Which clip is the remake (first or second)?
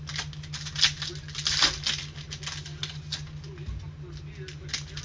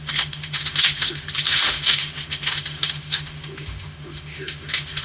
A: second